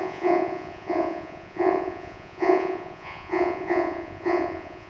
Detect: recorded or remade remade